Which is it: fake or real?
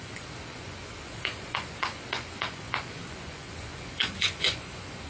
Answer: fake